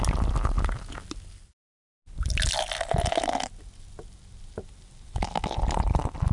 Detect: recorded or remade recorded